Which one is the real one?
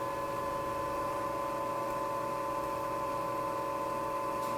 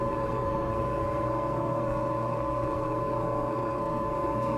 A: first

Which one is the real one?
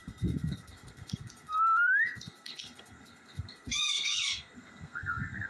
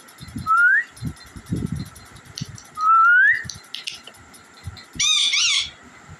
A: second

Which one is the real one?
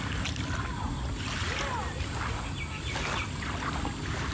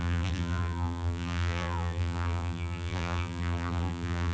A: first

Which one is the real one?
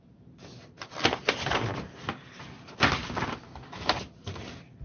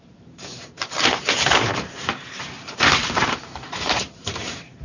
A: first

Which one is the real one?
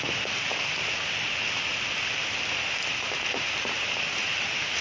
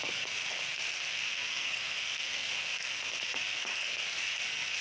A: first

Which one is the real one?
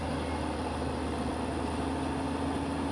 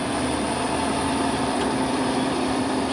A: first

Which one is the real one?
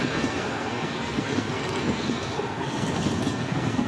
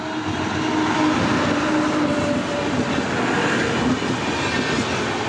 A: second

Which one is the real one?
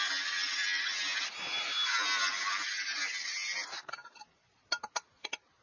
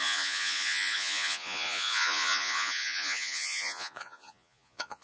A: first